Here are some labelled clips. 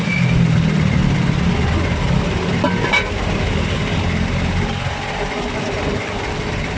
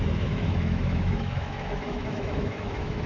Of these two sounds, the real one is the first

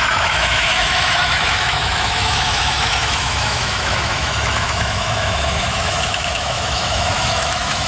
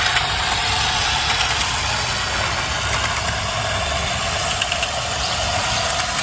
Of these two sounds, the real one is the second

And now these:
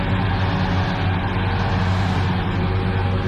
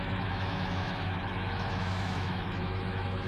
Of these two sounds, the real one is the first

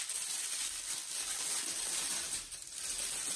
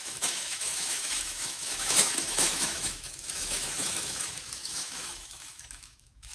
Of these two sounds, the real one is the first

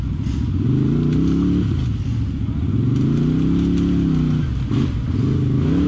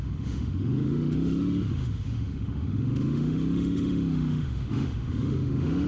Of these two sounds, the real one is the first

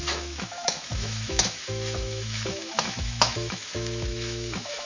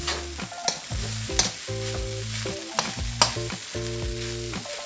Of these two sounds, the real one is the second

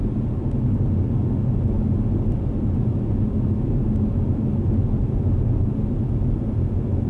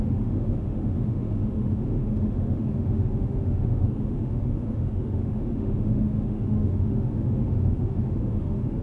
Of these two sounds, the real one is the first